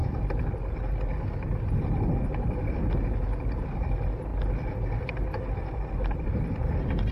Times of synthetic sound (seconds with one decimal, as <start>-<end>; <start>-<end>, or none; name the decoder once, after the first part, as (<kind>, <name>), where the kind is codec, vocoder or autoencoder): none